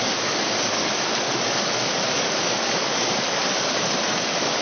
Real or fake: fake